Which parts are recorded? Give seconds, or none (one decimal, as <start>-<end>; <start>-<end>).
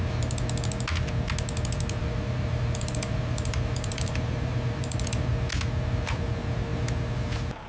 0.0-2.0; 5.3-7.7